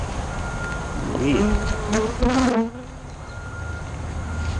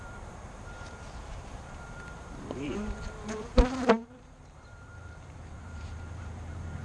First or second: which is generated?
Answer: second